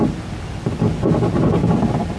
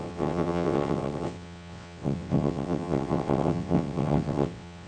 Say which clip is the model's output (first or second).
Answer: second